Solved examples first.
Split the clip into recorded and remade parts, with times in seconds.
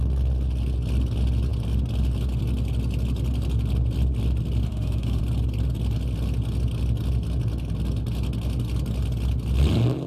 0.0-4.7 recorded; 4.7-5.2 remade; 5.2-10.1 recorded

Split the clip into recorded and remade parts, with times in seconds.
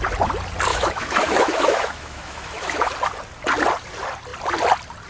0.0-0.7 recorded; 0.7-2.9 remade; 2.9-5.1 recorded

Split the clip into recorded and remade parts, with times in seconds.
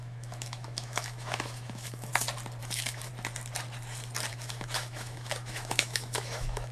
0.0-2.1 remade; 2.1-2.6 recorded; 2.6-3.1 remade; 3.1-4.3 recorded; 4.3-6.7 remade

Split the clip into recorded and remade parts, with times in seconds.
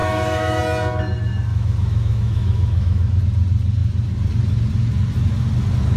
0.0-0.6 remade; 0.6-1.5 recorded; 1.5-3.2 remade; 3.2-6.0 recorded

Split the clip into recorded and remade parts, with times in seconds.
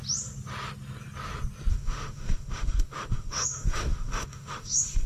0.0-1.7 recorded; 1.7-5.1 remade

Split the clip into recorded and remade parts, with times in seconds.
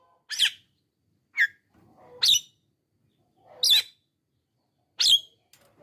0.0-5.8 recorded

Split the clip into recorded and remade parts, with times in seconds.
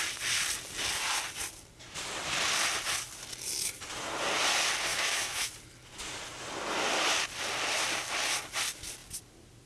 0.0-4.9 recorded; 4.9-5.5 remade; 5.5-9.7 recorded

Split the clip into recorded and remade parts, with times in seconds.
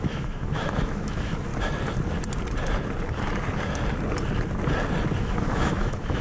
0.0-1.5 remade; 1.5-5.2 recorded; 5.2-6.2 remade